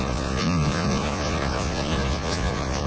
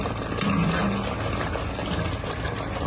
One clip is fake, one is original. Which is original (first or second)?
second